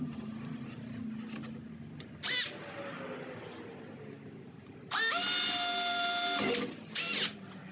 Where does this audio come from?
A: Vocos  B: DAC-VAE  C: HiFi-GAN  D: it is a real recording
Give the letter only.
D